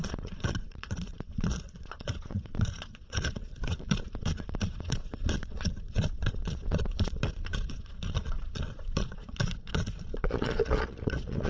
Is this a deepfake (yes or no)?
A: yes